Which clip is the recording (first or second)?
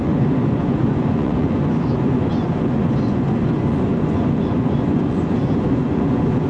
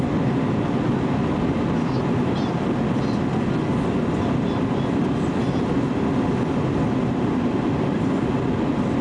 second